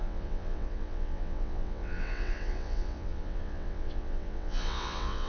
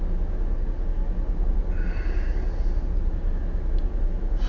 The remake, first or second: first